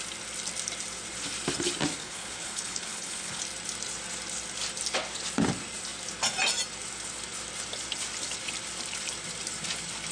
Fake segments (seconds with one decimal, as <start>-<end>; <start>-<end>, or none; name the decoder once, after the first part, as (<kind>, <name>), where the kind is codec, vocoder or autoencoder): 2.0-3.4 (codec, HILCodec)